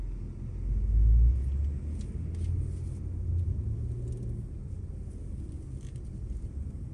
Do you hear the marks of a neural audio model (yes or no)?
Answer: no